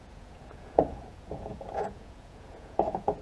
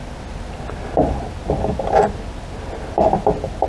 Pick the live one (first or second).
second